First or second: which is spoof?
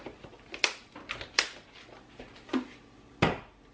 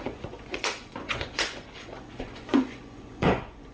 second